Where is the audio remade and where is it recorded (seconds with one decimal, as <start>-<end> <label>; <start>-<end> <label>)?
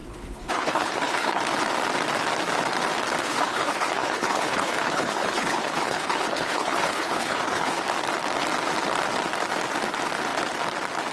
0.0-1.4 remade; 1.4-3.2 recorded; 3.2-7.8 remade; 7.8-11.1 recorded